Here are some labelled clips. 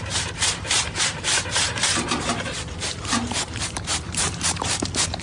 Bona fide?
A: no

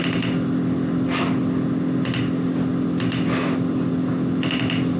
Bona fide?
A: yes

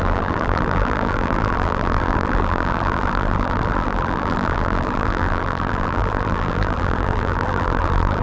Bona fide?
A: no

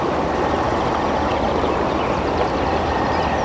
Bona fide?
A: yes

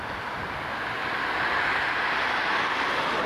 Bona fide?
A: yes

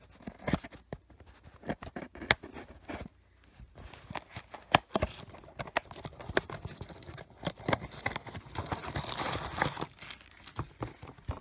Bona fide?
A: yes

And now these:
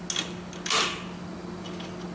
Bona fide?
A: yes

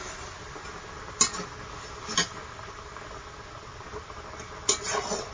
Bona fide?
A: yes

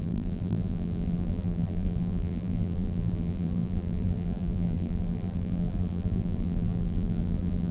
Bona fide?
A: no